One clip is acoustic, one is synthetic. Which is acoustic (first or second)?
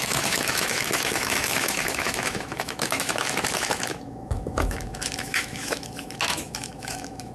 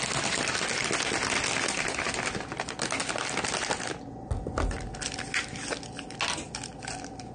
second